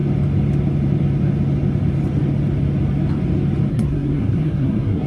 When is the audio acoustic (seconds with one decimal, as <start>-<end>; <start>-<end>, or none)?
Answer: 0.0-3.7